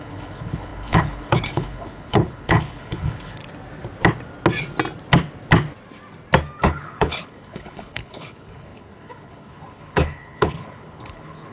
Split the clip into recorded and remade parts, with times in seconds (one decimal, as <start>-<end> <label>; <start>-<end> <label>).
0.0-3.4 remade; 3.4-6.6 recorded; 6.6-11.5 remade